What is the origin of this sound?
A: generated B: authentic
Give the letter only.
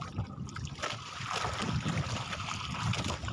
B